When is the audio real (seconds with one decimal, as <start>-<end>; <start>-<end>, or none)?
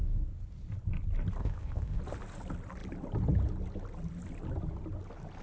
0.0-1.4; 2.0-5.4